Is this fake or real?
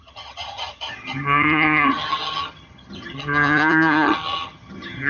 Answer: fake